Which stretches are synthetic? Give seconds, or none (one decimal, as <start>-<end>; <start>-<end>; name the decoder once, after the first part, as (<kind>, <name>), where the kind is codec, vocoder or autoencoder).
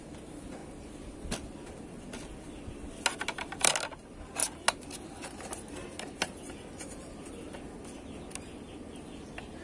none